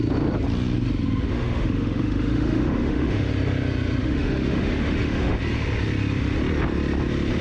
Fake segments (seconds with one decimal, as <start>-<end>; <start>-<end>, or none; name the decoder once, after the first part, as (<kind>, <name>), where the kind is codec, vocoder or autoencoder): 1.3-3.3 (autoencoder, DAC-VAE); 4.0-5.4